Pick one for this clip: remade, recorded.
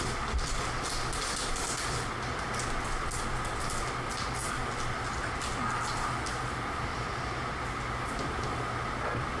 recorded